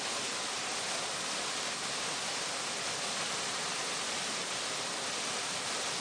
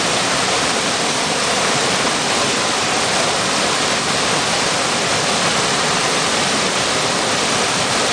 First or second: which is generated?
second